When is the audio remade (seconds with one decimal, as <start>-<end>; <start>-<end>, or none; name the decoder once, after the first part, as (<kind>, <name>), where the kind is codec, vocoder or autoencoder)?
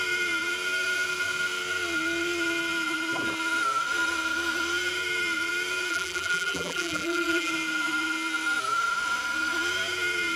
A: 5.9-7.5 (vocoder, BigVGAN v2)